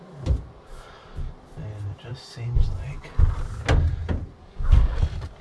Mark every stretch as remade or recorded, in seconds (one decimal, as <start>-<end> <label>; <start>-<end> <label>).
0.0-0.7 recorded; 0.7-1.3 remade; 1.3-4.4 recorded; 4.4-5.0 remade; 5.0-5.4 recorded